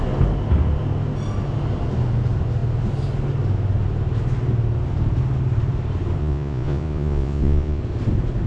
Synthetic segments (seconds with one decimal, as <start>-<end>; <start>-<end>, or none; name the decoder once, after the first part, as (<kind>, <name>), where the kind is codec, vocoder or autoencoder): 6.2-7.8 (vocoder, Vocos)